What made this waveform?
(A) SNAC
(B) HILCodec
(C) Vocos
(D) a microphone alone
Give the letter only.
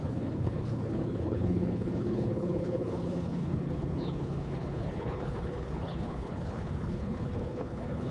B